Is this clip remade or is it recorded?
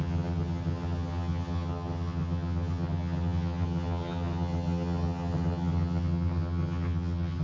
remade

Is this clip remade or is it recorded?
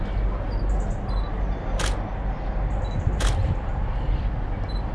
recorded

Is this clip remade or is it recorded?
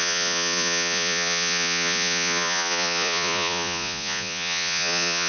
remade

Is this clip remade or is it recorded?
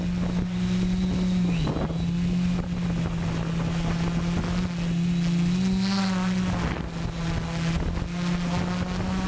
recorded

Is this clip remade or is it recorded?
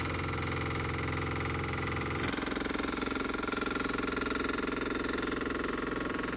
remade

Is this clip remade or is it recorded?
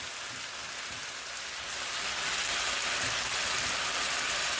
recorded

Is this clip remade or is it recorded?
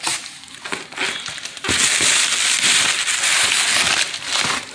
recorded